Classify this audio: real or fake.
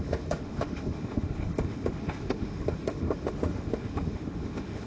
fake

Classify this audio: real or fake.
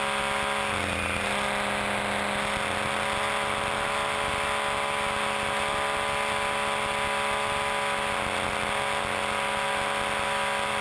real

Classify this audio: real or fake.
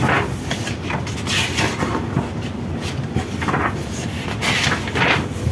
real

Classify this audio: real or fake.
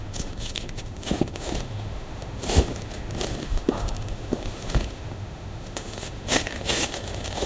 fake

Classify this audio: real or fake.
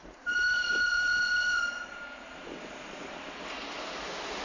real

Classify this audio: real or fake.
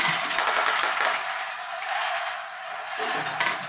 real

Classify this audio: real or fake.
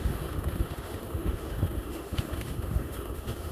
fake